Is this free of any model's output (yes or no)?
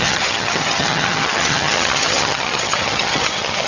no